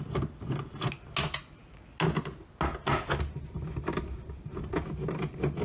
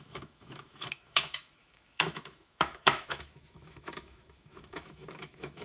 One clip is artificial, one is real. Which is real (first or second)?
first